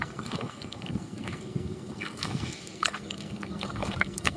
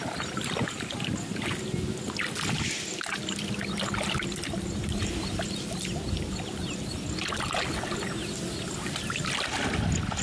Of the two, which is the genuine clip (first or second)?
second